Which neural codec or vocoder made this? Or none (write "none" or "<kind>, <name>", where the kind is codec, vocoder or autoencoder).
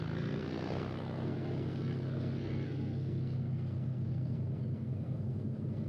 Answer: codec, SNAC